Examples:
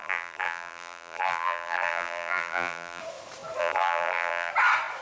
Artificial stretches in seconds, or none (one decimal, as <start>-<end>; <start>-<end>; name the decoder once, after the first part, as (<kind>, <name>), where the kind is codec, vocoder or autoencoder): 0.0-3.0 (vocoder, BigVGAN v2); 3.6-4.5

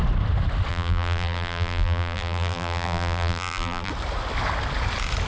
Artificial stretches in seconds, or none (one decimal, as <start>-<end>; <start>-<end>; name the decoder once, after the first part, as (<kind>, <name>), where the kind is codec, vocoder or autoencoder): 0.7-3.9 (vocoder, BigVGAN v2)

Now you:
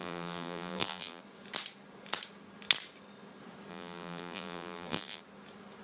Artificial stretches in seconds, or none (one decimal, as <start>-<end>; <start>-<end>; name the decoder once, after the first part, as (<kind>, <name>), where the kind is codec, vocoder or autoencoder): 0.0-1.2 (vocoder, BigVGAN v2); 3.7-5.2

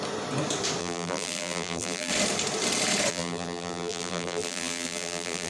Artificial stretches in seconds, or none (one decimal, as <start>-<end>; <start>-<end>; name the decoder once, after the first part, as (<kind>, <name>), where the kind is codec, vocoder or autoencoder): 0.8-2.1 (vocoder, BigVGAN v2); 3.1-5.5